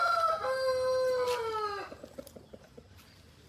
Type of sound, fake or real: real